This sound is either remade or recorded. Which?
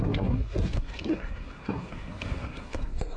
remade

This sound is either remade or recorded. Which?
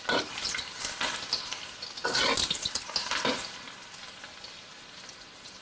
recorded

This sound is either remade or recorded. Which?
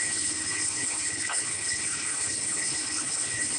remade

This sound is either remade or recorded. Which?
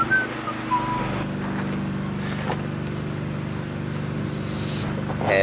recorded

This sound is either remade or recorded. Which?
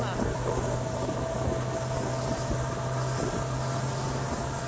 recorded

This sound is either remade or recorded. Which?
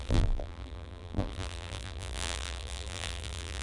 remade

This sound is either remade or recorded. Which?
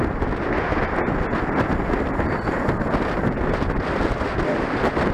recorded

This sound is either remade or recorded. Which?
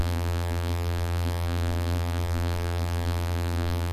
remade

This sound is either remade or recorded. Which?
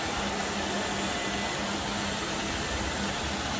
recorded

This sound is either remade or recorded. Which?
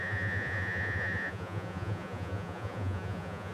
remade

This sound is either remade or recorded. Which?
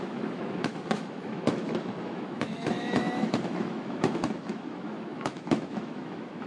remade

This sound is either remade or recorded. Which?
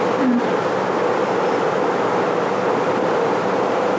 recorded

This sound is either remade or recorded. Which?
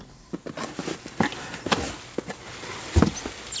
recorded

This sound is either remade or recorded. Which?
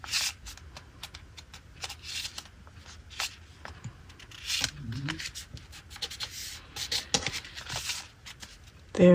recorded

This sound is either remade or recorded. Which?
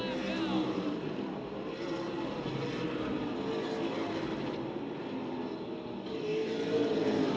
recorded